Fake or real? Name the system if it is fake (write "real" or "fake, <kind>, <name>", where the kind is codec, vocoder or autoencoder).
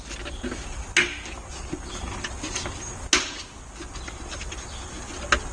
real